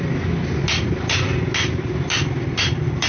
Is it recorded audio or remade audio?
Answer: recorded